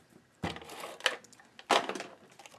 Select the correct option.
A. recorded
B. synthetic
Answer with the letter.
A